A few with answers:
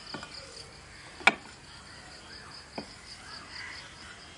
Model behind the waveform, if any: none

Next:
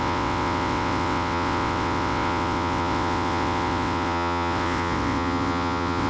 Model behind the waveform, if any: vocoder, WaveNeXt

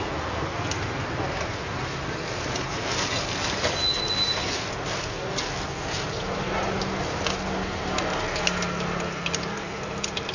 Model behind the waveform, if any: none